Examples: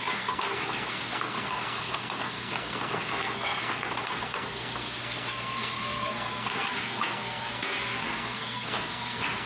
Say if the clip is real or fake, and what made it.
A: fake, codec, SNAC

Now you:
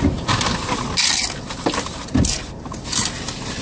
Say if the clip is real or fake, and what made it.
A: real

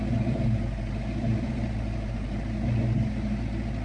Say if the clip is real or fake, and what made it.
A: real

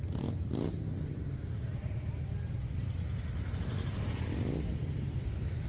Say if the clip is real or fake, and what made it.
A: real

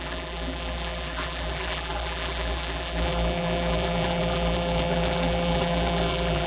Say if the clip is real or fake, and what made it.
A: fake, vocoder, BigVGAN v2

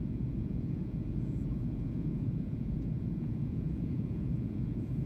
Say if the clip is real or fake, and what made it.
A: fake, vocoder, Vocos